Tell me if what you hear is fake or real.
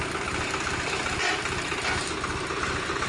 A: real